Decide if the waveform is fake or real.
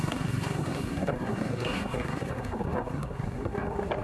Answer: fake